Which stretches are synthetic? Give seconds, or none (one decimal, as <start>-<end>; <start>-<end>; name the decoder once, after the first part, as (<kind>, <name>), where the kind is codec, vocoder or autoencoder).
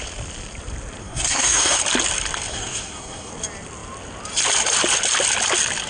1.0-1.8 (codec, SNAC); 2.5-3.3